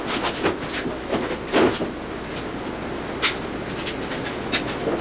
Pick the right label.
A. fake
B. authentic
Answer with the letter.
B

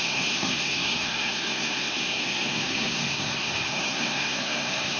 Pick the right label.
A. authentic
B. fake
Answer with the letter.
B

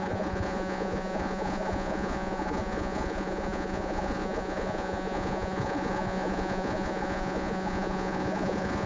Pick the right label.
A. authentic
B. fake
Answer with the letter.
B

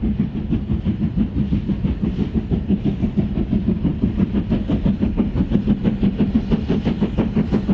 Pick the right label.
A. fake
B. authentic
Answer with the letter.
B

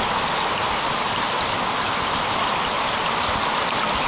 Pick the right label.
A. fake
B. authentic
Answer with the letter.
B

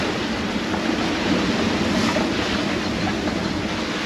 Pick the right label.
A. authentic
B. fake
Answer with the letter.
A